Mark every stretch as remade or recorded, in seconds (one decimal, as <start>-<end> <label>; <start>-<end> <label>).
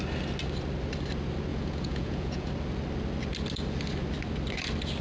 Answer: 0.0-1.5 recorded; 1.5-2.5 remade; 2.5-5.0 recorded